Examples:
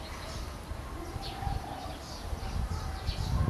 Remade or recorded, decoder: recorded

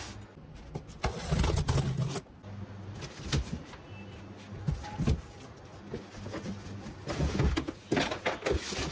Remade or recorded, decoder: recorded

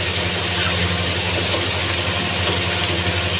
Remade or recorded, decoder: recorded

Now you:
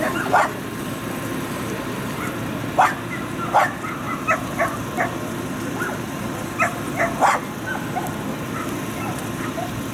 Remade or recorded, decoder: recorded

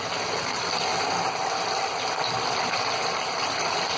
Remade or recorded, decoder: remade, vocoder, BigVGAN v2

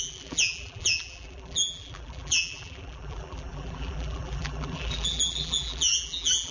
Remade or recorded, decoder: remade, vocoder, BigVGAN v2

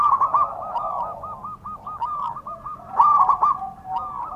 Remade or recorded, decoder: recorded